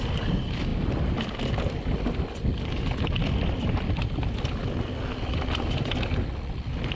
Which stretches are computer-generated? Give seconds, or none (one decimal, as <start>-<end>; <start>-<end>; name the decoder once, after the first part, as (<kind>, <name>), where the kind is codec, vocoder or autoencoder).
none